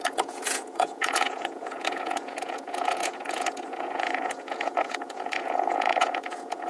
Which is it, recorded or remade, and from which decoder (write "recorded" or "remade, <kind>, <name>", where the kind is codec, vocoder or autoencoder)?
remade, vocoder, Vocos